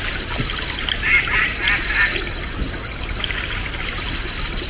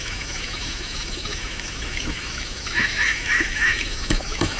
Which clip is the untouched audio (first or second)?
first